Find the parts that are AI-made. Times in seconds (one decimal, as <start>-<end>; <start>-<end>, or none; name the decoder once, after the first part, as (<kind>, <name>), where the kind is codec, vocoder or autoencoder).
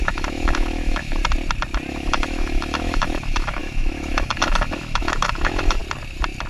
0.0-1.2 (autoencoder, DAC-VAE); 1.9-5.8